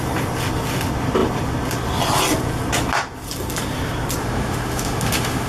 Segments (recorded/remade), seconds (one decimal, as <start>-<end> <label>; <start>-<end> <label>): 0.0-4.2 recorded; 4.2-5.5 remade